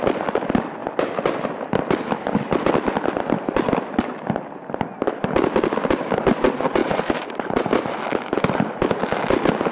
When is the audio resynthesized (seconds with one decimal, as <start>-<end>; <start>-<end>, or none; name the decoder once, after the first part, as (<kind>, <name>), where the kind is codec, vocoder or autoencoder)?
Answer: 6.8-7.7 (vocoder, BigVGAN v2)